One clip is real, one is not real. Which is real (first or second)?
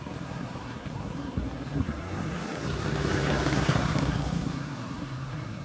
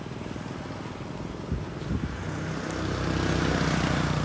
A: second